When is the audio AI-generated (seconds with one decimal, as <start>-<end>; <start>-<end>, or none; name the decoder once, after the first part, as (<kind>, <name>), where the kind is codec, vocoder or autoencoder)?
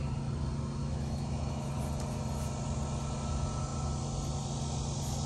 0.8-1.7 (autoencoder, DAC-VAE)